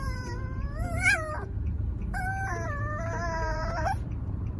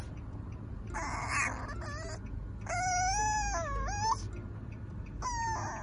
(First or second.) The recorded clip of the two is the second